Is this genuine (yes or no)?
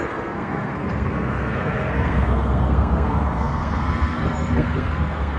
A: no